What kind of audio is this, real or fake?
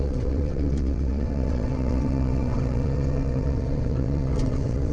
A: fake